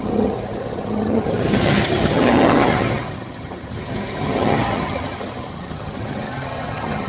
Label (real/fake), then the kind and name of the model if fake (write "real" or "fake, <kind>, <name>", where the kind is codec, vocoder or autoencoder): fake, vocoder, HiFi-GAN